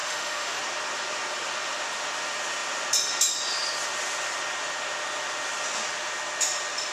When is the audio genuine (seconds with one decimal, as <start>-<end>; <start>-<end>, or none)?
0.6-6.9